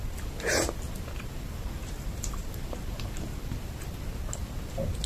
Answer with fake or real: real